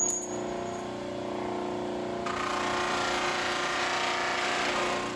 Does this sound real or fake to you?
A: real